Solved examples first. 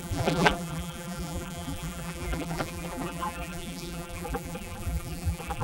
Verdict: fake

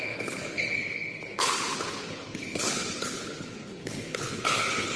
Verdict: fake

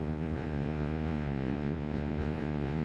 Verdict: fake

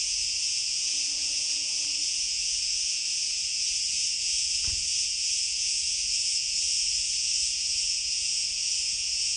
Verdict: fake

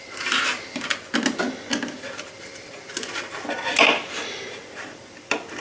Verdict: real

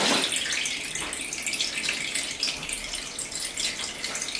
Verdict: real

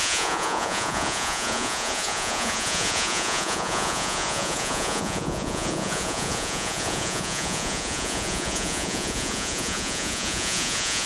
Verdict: fake